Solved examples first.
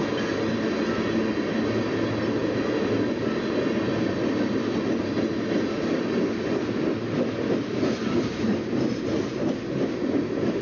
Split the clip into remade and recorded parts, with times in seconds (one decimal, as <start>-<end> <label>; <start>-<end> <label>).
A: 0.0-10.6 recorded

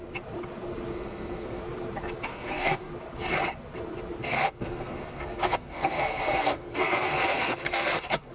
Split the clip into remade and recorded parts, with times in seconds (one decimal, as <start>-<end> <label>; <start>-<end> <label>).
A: 0.0-0.9 recorded; 0.9-1.6 remade; 1.6-2.3 recorded; 2.3-2.9 remade; 2.9-4.2 recorded; 4.2-8.3 remade

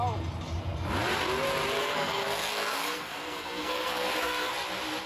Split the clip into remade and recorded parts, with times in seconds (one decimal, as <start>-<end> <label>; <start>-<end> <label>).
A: 0.0-1.8 recorded; 1.8-4.5 remade; 4.5-5.1 recorded